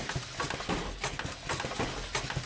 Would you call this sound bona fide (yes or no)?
yes